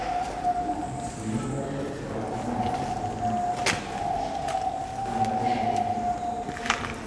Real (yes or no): yes